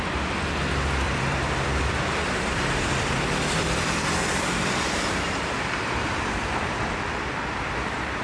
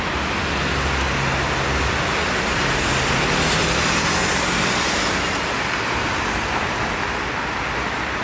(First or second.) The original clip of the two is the second